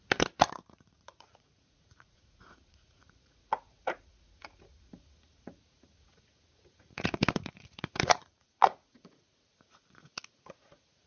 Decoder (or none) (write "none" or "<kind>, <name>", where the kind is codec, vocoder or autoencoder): vocoder, Vocos